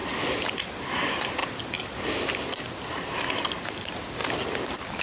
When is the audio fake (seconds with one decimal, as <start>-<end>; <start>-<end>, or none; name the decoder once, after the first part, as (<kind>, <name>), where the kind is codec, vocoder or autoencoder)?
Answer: 0.5-1.4 (vocoder, BigVGAN v2); 3.3-4.2